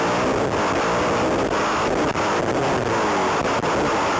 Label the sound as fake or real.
real